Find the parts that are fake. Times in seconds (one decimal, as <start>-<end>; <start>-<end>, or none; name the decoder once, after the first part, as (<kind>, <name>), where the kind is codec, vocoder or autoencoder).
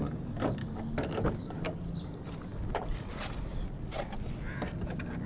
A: 0.6-1.8 (codec, DAC)